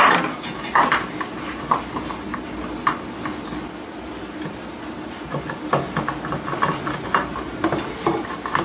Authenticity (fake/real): real